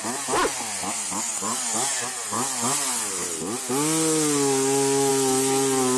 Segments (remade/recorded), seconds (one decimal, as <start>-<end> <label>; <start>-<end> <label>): 0.0-6.0 recorded

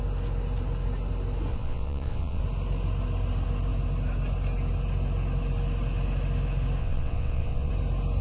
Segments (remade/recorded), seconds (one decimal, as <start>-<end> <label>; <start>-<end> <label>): 0.0-1.5 recorded; 1.5-2.4 remade; 2.4-6.8 recorded; 6.8-7.7 remade; 7.7-8.2 recorded

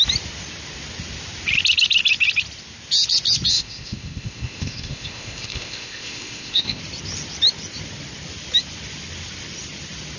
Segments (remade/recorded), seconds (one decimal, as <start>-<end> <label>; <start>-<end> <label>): 0.0-3.5 recorded; 3.5-6.8 remade; 6.8-10.2 recorded

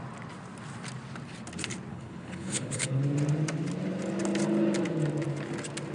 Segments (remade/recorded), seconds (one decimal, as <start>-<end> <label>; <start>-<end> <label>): 0.0-1.9 recorded; 1.9-3.0 remade; 3.0-5.9 recorded